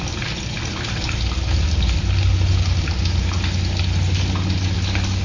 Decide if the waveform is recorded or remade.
recorded